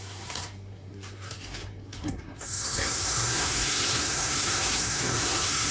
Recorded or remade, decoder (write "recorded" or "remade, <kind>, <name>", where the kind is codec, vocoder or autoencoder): remade, codec, SNAC